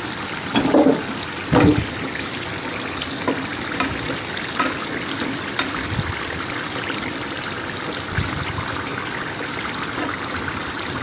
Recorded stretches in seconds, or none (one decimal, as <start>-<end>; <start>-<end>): 0.0-11.0